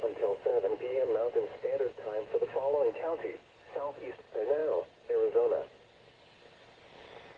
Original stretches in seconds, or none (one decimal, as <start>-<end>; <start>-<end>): 0.0-2.3; 4.0-7.4